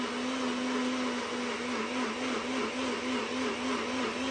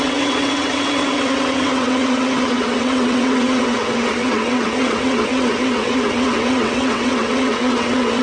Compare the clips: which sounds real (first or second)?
first